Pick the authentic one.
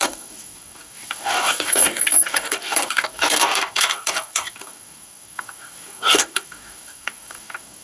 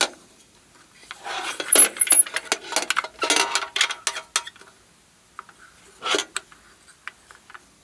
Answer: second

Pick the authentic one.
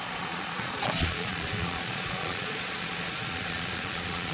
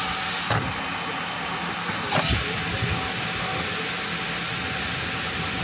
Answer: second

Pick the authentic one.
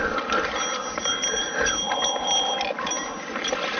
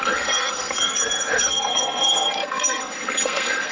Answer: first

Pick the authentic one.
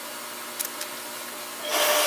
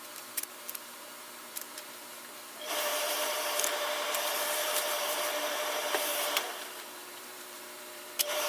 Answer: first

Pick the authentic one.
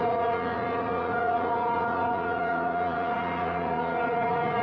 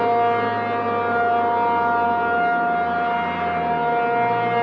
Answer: second